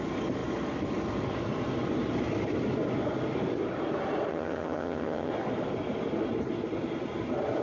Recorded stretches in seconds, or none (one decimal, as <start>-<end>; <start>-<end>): 0.0-4.3; 5.3-7.6